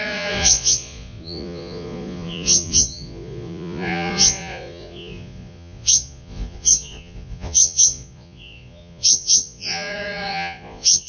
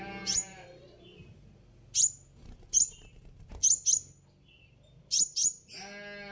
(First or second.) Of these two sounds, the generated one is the first